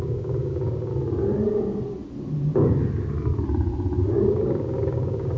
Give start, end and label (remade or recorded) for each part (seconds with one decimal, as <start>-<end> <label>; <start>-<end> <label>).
0.0-0.9 remade; 0.9-4.1 recorded; 4.1-5.4 remade